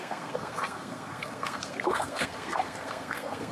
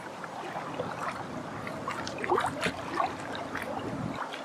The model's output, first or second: first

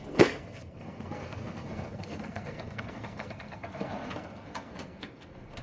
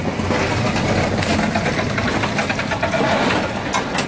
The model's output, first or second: first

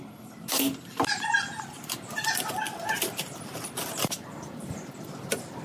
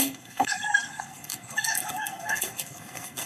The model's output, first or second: second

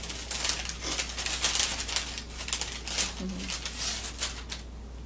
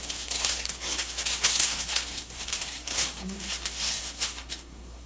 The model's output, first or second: second